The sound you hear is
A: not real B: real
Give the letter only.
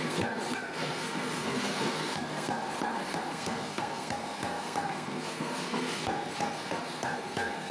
A